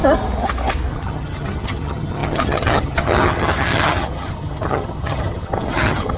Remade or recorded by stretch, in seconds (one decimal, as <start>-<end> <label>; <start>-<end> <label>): 0.0-0.9 recorded; 0.9-6.2 remade